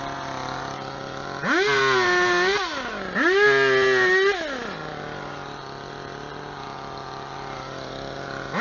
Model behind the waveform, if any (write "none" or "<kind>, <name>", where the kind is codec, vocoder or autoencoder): none